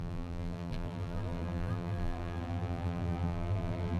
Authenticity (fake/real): fake